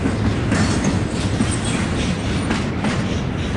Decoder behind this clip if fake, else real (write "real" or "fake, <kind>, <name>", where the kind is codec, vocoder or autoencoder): real